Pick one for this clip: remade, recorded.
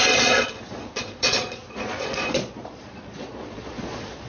remade